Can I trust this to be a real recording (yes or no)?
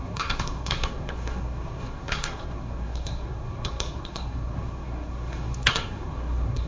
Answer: no